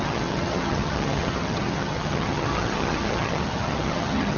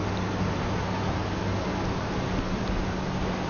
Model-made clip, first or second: first